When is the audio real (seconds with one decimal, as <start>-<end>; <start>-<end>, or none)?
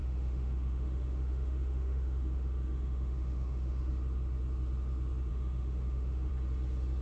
3.9-5.3; 6.3-7.0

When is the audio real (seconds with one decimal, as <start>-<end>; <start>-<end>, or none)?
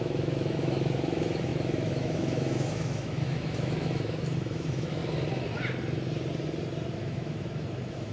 5.0-6.9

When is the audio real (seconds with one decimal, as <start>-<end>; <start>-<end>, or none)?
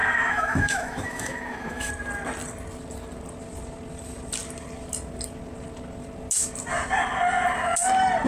1.9-8.3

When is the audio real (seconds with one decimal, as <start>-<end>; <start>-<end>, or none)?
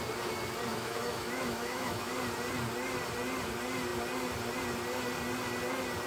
0.0-0.7; 2.1-6.1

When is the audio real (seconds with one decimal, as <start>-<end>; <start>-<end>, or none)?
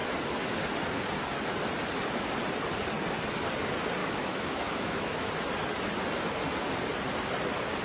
0.0-4.0; 5.3-7.8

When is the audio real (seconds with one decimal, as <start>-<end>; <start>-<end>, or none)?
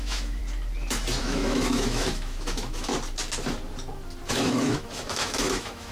0.4-1.2; 2.9-4.3